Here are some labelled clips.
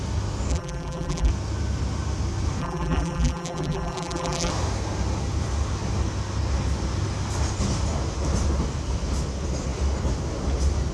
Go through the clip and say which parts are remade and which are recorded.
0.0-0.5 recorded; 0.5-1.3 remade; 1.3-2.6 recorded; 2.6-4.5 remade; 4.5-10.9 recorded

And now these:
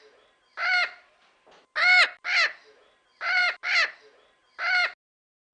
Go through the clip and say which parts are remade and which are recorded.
0.0-5.5 recorded

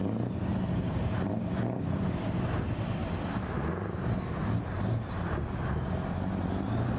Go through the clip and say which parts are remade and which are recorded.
0.0-0.5 recorded; 0.5-1.3 remade; 1.3-7.0 recorded

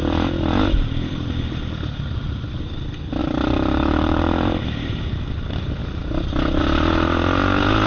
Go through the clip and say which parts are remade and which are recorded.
0.0-3.2 recorded; 3.2-5.2 remade; 5.2-7.9 recorded

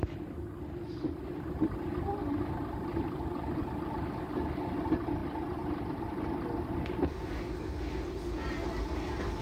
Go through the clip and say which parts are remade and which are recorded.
0.0-9.4 recorded

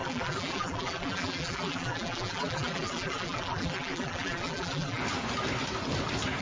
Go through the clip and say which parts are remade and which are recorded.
0.0-5.0 remade; 5.0-6.4 recorded

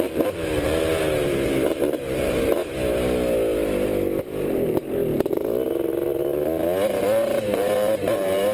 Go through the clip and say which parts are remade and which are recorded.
0.0-2.6 remade; 2.6-4.2 recorded; 4.2-5.0 remade; 5.0-7.0 recorded; 7.0-8.5 remade

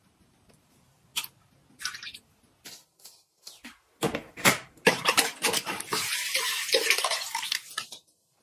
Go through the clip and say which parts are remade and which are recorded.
0.0-1.1 remade; 1.1-4.3 recorded; 4.3-8.4 remade